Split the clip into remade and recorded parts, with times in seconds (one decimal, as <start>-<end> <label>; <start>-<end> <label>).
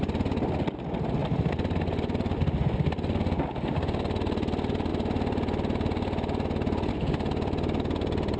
0.0-8.4 recorded